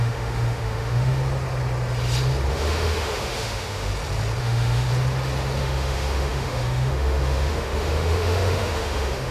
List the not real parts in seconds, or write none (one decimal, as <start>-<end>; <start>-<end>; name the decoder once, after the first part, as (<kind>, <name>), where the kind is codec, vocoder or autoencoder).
0.0-1.2 (autoencoder, DAC-VAE); 2.5-3.9; 4.4-4.9; 5.6-9.3